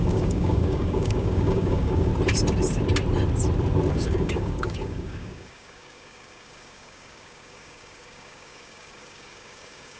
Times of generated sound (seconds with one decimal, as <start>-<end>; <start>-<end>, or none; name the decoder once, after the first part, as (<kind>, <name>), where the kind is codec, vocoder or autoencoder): 0.0-2.1 (codec, DAC); 3.9-10.0